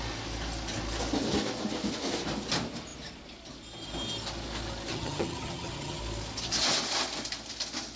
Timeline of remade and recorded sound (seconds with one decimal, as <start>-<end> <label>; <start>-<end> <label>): 0.0-4.9 recorded; 4.9-6.0 remade; 6.0-8.0 recorded